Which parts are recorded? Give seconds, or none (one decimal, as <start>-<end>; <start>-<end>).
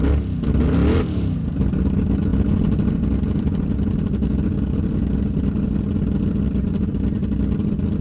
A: 0.0-8.0